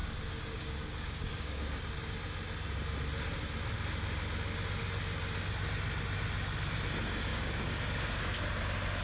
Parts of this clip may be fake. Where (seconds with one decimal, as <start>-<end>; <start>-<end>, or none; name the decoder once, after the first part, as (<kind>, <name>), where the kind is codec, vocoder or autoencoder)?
0.0-1.8 (codec, DAC); 7.3-8.4

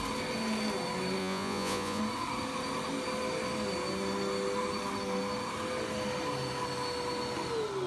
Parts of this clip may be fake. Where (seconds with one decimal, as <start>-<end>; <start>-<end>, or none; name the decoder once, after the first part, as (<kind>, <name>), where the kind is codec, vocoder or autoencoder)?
1.2-2.0 (vocoder, Vocos)

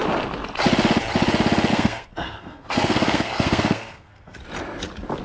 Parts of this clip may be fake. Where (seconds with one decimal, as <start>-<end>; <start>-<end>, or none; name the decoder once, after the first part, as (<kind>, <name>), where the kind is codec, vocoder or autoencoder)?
1.7-4.4 (codec, SNAC)

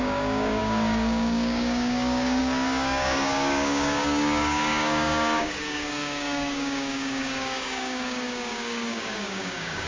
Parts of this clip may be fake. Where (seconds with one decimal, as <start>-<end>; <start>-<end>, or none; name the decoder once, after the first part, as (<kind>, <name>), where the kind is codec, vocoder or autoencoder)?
0.0-9.9 (codec, DAC)

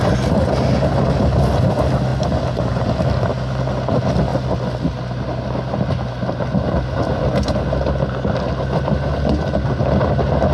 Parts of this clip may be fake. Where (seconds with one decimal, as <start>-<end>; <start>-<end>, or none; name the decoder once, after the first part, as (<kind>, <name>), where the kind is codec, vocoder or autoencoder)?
none

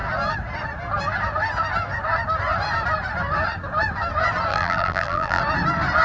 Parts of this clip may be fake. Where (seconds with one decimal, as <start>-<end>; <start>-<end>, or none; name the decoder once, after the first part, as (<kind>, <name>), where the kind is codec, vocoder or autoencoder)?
4.5-5.4 (vocoder, BigVGAN v2)